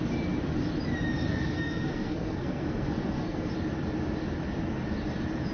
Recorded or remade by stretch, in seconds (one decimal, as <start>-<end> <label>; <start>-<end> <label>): 0.0-1.3 recorded; 1.3-3.5 remade; 3.5-5.5 recorded